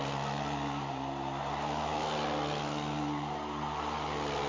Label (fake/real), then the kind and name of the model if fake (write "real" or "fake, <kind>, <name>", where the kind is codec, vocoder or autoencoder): real